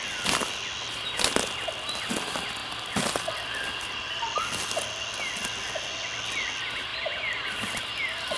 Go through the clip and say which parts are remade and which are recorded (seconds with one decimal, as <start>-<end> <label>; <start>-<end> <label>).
0.0-8.4 recorded